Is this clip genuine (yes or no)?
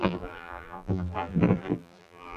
no